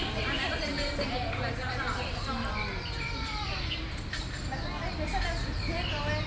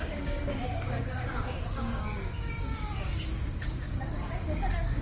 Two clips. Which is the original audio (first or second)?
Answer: first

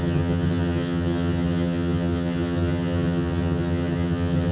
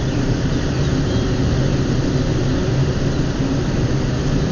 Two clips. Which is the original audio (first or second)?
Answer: second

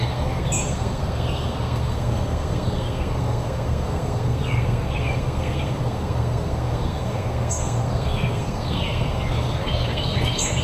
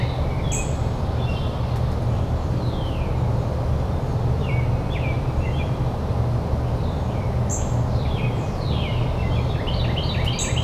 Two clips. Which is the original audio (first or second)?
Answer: second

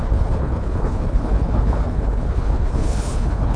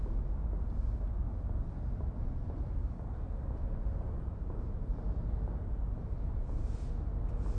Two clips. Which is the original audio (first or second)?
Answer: second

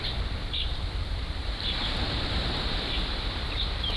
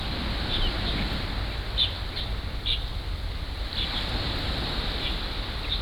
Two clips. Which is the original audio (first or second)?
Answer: second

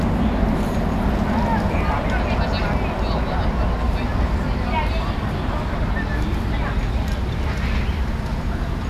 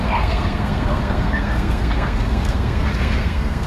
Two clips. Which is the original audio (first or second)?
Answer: first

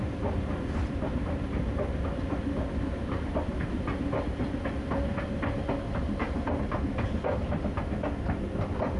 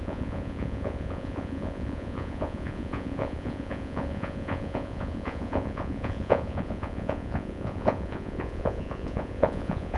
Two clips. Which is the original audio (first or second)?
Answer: first